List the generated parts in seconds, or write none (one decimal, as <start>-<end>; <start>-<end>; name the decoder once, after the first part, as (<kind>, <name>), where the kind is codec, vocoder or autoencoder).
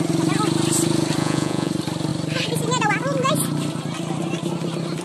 1.2-1.7 (vocoder, Vocos)